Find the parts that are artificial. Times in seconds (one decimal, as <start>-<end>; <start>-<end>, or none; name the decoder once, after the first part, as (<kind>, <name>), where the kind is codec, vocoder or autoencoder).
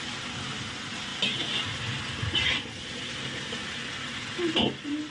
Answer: none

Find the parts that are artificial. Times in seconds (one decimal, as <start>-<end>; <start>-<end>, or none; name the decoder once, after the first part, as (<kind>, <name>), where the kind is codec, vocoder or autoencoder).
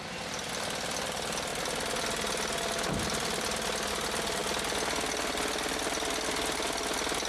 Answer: 0.0-1.5 (vocoder, BigVGAN v2); 3.9-4.4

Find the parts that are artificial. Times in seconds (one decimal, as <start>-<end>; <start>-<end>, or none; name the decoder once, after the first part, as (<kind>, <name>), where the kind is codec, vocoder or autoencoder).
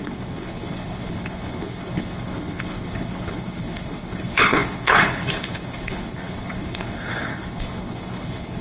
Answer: 0.0-8.6 (codec, HILCodec)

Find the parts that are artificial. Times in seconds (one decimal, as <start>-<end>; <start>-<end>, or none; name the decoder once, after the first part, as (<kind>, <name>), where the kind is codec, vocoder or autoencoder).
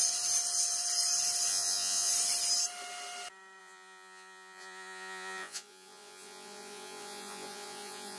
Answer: 1.5-2.1 (vocoder, Vocos); 3.6-8.2